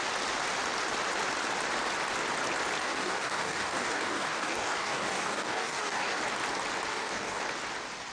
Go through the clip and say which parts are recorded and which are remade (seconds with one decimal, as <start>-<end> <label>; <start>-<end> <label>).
0.0-2.8 recorded; 2.8-6.2 remade; 6.2-6.9 recorded; 6.9-7.4 remade; 7.4-8.1 recorded